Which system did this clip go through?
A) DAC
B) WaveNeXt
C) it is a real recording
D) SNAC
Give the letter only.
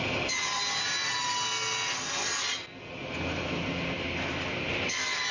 C